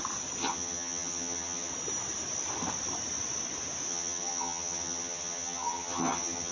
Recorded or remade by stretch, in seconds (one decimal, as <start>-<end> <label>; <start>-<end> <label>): 0.0-0.4 recorded; 0.4-1.7 remade; 1.7-3.9 recorded; 3.9-6.5 remade